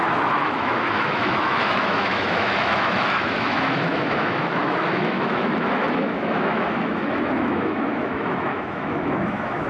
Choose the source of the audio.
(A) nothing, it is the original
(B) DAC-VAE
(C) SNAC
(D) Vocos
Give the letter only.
B